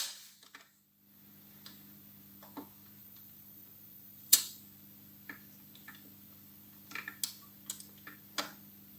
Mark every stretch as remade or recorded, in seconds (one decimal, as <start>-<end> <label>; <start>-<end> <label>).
0.0-3.0 recorded; 3.0-4.6 remade; 4.6-9.0 recorded

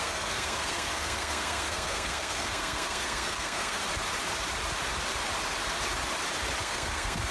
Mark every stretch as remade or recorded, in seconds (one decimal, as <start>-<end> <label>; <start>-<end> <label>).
0.0-3.8 remade; 3.8-6.6 recorded; 6.6-7.3 remade